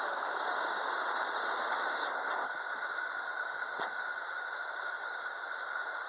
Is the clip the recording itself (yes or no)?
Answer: yes